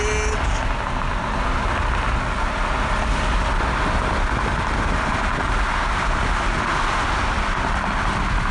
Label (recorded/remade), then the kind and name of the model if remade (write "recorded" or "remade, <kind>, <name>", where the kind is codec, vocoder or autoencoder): recorded